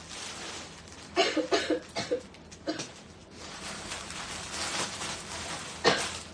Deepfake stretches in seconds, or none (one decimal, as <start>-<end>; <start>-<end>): 3.2-4.3